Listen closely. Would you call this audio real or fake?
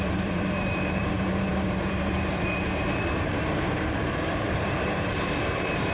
fake